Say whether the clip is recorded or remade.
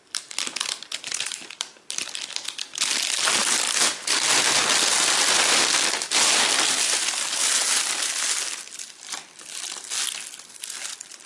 recorded